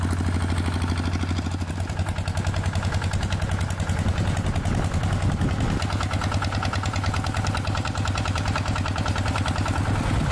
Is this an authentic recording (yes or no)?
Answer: yes